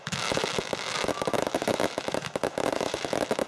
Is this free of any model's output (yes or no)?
no